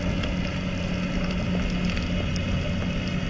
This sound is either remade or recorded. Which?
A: recorded